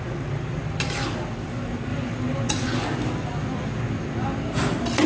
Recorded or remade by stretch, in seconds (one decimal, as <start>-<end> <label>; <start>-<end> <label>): 0.0-5.1 recorded